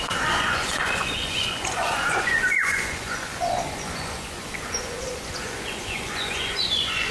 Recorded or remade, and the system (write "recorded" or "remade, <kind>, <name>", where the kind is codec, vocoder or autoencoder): remade, vocoder, Vocos